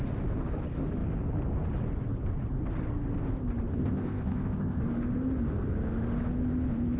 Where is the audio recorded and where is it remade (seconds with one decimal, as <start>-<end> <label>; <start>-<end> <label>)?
0.0-3.7 recorded; 3.7-4.8 remade; 4.8-7.0 recorded